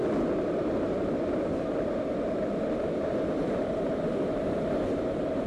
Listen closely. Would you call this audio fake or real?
real